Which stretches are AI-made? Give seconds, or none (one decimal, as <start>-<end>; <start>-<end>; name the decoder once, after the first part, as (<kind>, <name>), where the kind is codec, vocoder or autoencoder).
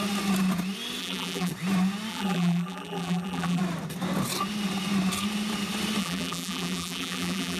1.0-1.5 (vocoder, BigVGAN v2); 2.1-3.6; 6.0-7.6